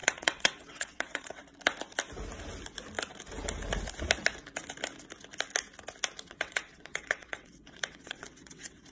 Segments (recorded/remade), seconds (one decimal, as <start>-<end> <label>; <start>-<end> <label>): 0.0-1.4 remade; 1.4-6.3 recorded; 6.3-8.9 remade